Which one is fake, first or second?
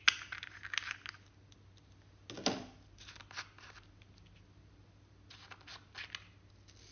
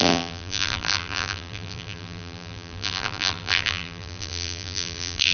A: second